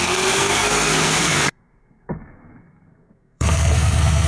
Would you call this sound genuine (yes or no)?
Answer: no